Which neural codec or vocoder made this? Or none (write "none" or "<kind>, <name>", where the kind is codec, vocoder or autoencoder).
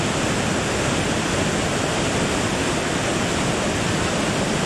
none